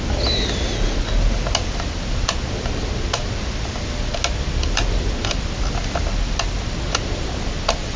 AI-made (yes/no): no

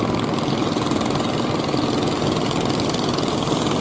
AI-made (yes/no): no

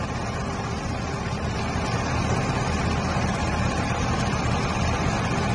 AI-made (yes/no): no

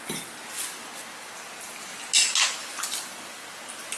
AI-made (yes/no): no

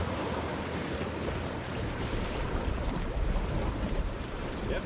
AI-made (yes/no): yes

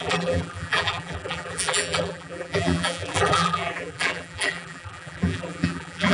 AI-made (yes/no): yes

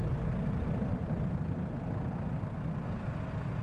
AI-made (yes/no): no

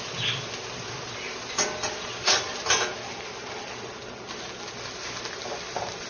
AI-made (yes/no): no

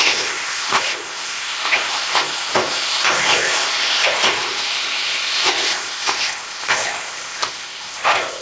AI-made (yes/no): yes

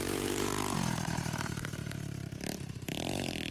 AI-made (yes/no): yes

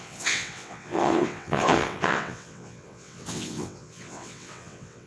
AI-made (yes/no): yes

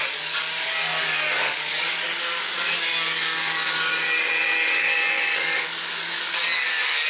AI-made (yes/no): yes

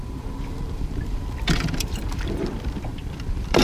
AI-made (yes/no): yes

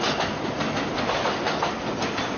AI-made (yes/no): no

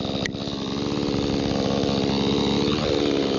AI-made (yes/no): no